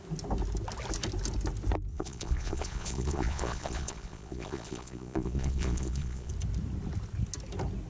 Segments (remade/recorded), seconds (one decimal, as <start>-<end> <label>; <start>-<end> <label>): 0.0-1.9 recorded; 1.9-6.3 remade; 6.3-7.9 recorded